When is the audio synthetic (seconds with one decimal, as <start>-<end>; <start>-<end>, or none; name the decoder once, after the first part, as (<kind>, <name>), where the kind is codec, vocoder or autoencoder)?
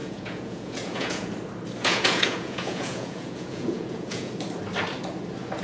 0.0-1.3 (vocoder, Vocos); 1.8-4.3